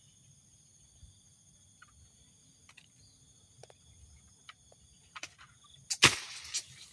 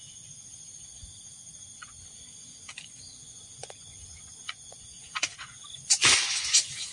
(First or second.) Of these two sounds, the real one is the first